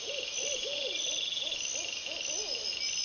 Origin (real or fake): real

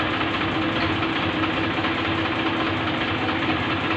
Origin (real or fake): real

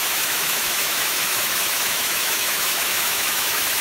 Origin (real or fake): fake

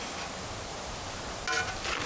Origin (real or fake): real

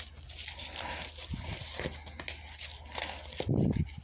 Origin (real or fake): real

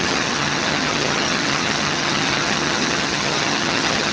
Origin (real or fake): fake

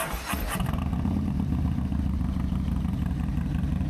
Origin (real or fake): fake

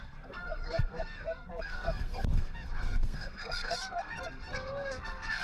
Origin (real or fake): fake